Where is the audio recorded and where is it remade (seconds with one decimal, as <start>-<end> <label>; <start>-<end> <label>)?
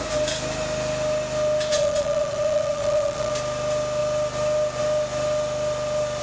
0.0-1.7 recorded; 1.7-3.3 remade; 3.3-6.2 recorded